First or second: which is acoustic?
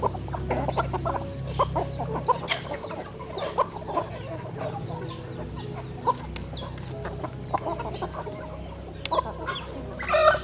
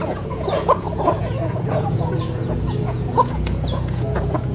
first